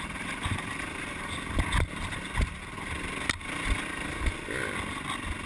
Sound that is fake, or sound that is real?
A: real